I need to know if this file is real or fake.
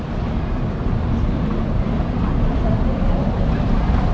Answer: real